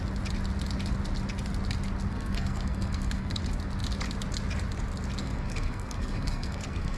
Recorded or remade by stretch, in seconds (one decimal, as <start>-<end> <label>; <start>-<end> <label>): 0.0-2.1 recorded; 2.1-3.4 remade; 3.4-5.2 recorded; 5.2-7.0 remade